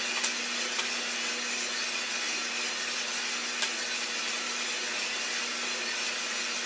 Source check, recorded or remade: recorded